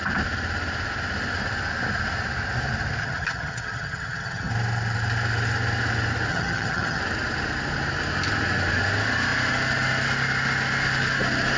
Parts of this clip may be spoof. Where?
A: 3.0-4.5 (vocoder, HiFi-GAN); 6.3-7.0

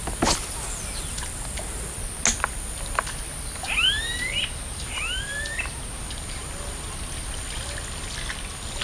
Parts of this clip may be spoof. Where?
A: none

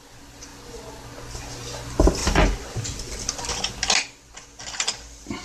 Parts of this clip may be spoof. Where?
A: none

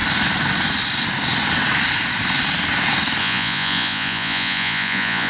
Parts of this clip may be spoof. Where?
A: 3.2-5.3 (vocoder, Vocos)

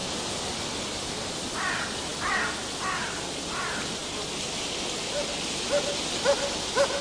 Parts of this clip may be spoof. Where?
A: none

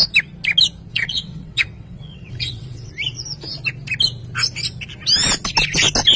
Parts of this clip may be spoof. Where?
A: 0.9-2.9 (vocoder, WaveNeXt)

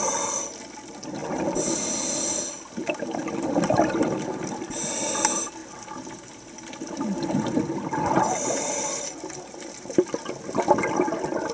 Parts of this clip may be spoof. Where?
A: 5.6-9.7 (vocoder, BigVGAN v2)

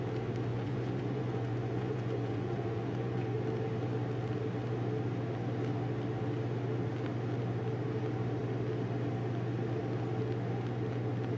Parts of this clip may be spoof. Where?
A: 0.5-3.4 (vocoder, Vocos)